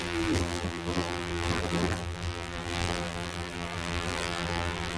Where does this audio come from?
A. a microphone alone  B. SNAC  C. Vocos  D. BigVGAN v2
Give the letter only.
D